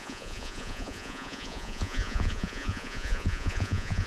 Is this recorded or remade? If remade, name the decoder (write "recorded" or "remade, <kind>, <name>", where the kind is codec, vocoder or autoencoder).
remade, vocoder, Vocos